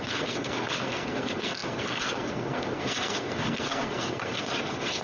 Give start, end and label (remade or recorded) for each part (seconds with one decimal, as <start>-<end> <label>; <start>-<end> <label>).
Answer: 0.0-5.0 remade